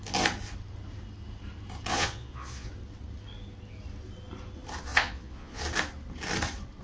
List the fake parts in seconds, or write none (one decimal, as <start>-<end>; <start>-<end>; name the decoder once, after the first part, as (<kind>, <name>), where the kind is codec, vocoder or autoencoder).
1.9-2.7 (vocoder, Vocos); 4.9-5.6